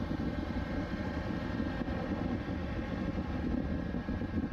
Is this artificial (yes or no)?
yes